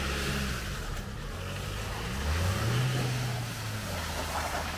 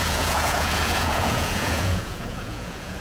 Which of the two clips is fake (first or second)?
second